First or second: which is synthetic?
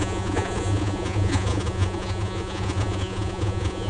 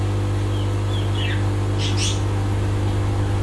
first